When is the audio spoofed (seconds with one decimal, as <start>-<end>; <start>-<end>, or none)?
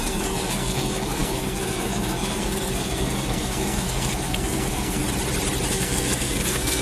0.0-5.0; 5.7-6.8